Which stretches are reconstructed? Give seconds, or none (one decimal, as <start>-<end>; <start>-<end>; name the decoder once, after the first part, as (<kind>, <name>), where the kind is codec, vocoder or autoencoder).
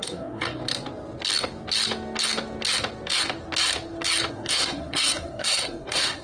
0.0-0.6 (codec, SNAC); 4.3-6.2